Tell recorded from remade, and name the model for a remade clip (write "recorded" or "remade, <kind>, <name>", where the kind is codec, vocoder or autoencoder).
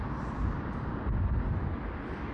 recorded